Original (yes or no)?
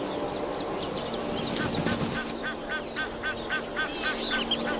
yes